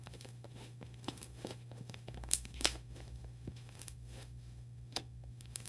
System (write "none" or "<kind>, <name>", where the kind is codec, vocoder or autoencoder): autoencoder, DAC-VAE